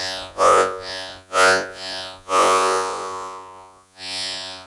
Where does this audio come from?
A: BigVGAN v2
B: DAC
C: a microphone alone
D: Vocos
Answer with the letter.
D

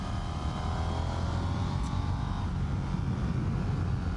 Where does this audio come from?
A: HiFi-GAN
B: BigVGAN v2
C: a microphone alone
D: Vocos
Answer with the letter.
C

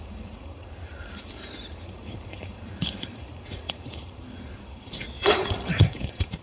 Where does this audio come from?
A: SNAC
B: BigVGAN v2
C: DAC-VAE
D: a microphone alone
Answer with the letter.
B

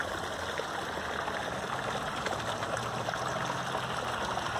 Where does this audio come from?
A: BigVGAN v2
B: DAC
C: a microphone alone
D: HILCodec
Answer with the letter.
C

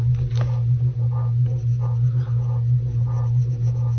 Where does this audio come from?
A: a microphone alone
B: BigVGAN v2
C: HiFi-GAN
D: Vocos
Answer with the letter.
A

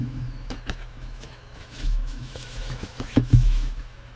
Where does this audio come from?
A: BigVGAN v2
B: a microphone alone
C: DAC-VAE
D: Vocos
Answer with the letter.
C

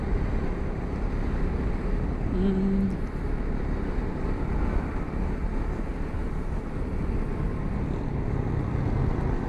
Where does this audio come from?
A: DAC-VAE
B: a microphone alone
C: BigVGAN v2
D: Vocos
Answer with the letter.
B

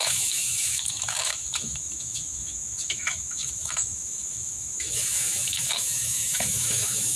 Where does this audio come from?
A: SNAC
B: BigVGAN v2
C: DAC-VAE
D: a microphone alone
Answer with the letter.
C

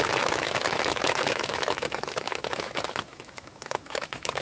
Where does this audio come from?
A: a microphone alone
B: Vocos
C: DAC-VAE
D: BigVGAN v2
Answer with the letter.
C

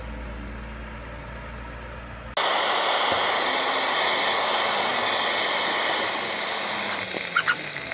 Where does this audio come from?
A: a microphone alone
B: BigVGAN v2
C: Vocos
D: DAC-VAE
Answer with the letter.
A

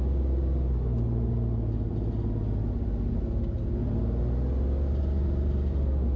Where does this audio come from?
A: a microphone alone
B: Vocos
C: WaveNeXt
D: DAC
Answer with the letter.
A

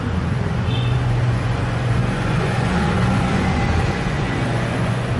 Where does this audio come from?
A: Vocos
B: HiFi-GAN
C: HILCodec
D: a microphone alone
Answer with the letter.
A